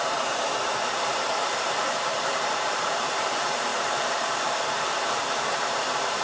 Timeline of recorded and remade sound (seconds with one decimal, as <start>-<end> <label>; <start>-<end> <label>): 0.0-6.2 remade